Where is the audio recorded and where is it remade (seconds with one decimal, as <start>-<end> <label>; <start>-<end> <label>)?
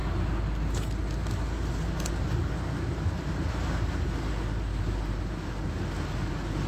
0.0-6.7 recorded